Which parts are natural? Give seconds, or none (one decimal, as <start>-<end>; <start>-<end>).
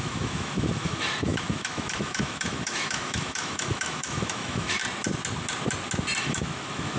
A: 4.8-6.2